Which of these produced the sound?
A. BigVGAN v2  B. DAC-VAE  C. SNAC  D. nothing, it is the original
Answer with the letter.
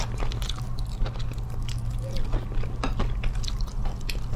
D